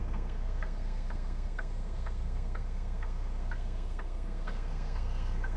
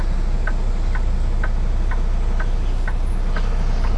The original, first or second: second